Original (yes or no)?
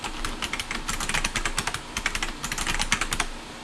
yes